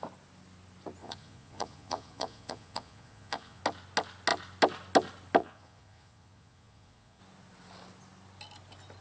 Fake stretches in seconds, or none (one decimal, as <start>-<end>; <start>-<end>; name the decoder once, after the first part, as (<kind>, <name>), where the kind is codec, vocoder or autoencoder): 1.0-3.6 (vocoder, Vocos); 5.4-7.2